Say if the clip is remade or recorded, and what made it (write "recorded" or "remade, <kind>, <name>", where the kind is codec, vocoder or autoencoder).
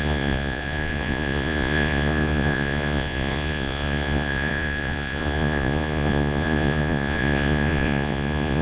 remade, vocoder, Vocos